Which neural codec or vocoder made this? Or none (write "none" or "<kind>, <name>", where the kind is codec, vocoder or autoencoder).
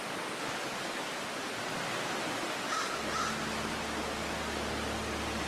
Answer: none